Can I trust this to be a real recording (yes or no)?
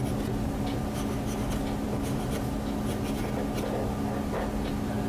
yes